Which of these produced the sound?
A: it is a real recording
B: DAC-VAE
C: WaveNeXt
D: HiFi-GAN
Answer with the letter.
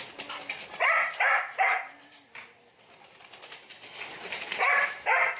A